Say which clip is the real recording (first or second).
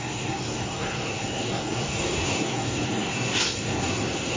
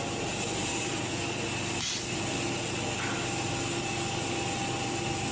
second